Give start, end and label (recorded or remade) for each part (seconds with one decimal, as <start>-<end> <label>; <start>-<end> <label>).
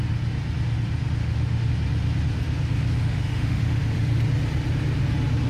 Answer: 0.0-1.2 recorded; 1.2-1.7 remade; 1.7-3.0 recorded; 3.0-4.2 remade; 4.2-5.5 recorded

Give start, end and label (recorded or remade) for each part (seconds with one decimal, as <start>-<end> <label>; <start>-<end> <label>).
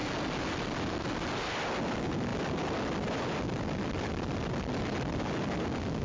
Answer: 0.0-2.3 recorded; 2.3-6.0 remade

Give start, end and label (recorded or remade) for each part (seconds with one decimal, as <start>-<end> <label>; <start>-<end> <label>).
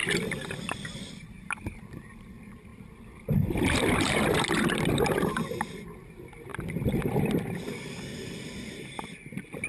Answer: 0.0-1.1 remade; 1.1-6.5 recorded; 6.5-8.9 remade; 8.9-9.7 recorded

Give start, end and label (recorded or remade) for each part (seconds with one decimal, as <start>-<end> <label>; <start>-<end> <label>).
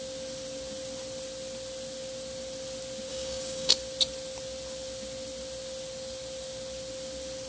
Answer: 0.0-3.1 recorded; 3.1-3.7 remade; 3.7-7.5 recorded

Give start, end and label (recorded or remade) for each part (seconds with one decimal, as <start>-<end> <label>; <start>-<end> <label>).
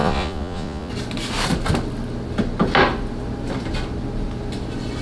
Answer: 0.0-0.9 remade; 0.9-5.0 recorded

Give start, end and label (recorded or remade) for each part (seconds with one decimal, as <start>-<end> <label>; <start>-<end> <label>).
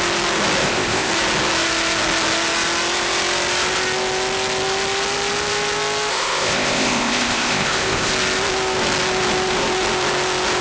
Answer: 0.0-0.6 recorded; 0.6-1.1 remade; 1.1-6.1 recorded; 6.1-8.1 remade; 8.1-10.6 recorded